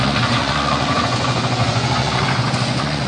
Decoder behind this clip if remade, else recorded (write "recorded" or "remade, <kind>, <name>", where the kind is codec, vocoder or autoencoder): remade, vocoder, Vocos